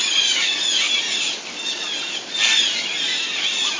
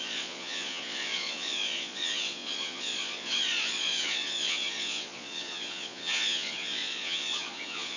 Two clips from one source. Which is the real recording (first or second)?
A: first